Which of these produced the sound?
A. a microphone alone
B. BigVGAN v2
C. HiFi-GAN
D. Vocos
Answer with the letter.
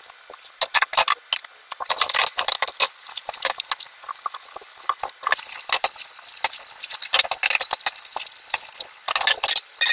A